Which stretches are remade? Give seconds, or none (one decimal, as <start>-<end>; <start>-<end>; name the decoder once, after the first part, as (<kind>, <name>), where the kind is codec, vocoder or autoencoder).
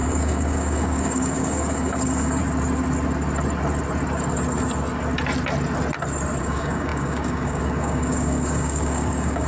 0.0-2.4 (codec, DAC); 6.4-9.5